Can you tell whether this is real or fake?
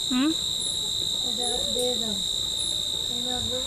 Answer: real